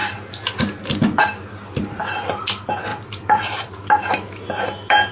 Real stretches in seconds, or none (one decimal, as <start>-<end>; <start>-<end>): 0.0-1.3; 2.0-2.9; 4.1-5.1